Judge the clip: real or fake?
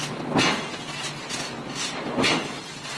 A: real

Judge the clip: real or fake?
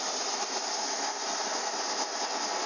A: real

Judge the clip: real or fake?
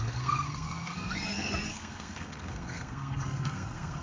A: fake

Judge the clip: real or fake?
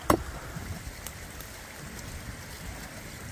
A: real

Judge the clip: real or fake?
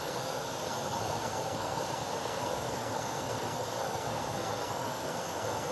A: fake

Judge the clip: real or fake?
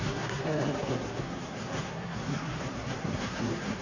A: fake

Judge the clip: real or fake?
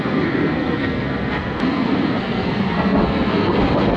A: fake